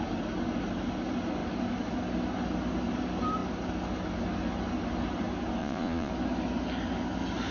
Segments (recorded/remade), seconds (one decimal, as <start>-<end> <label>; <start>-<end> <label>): 0.0-5.6 recorded; 5.6-6.1 remade; 6.1-7.5 recorded